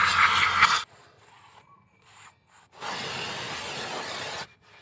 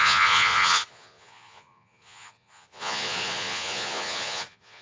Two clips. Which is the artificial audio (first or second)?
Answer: second